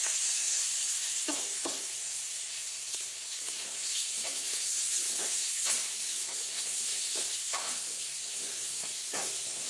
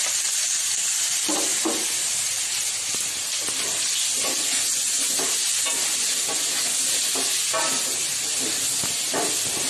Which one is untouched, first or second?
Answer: second